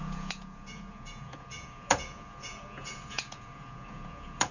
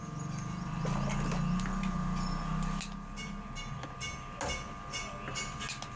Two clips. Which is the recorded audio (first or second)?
second